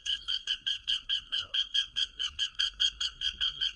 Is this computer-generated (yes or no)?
yes